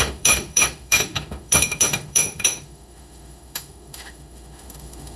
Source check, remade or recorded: remade